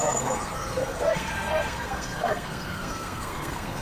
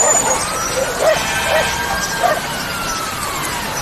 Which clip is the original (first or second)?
second